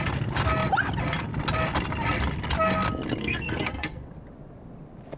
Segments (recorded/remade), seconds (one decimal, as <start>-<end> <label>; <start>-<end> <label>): 0.0-3.2 recorded; 3.2-4.1 remade; 4.1-5.2 recorded

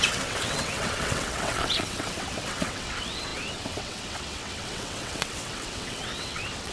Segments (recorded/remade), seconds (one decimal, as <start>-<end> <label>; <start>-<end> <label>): 0.0-6.7 remade

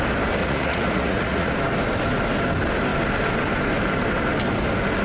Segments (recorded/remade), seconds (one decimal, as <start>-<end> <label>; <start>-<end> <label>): 0.0-0.4 recorded; 0.4-1.5 remade; 1.5-5.0 recorded